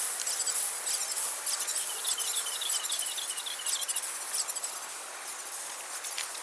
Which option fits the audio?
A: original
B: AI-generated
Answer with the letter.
A